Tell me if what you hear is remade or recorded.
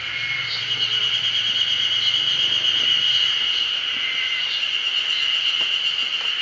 recorded